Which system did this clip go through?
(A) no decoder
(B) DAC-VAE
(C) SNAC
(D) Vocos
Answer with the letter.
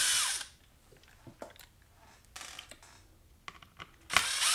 A